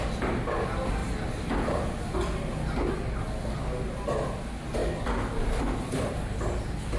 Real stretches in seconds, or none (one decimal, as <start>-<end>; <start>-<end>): 0.0-7.0